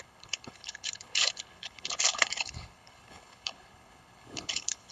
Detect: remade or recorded remade